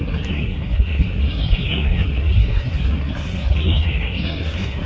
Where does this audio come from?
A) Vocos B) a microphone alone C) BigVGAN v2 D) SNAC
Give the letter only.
D